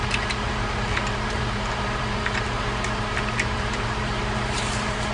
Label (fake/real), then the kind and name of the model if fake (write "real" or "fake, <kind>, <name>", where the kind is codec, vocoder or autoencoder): fake, vocoder, BigVGAN v2